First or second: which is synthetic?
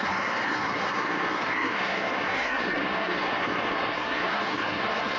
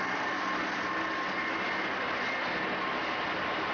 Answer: first